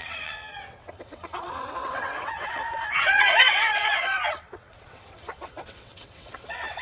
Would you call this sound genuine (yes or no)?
no